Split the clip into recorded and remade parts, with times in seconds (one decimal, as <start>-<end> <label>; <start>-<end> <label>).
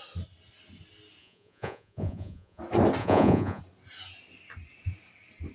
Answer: 0.0-1.2 recorded; 1.2-2.6 remade; 2.6-3.0 recorded; 3.0-3.6 remade; 3.6-5.5 recorded